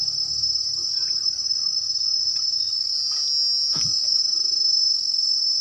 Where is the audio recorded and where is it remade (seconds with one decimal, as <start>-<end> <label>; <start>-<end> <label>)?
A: 0.0-0.8 recorded; 0.8-1.8 remade; 1.8-3.7 recorded; 3.7-4.2 remade; 4.2-5.6 recorded